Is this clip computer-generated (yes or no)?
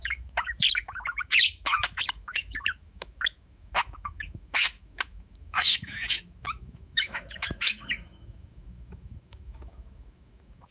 yes